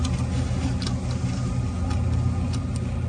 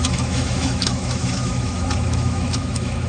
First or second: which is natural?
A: first